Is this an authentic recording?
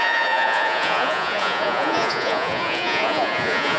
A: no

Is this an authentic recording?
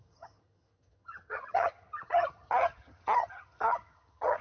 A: no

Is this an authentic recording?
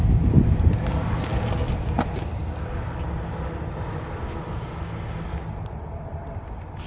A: yes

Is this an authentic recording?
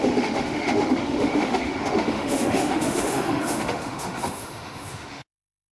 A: no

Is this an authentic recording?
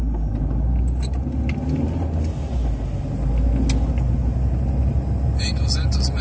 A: yes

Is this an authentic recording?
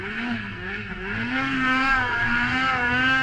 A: no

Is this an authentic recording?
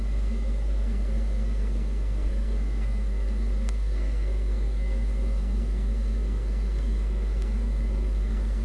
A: no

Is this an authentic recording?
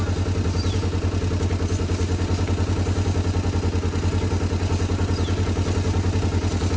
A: yes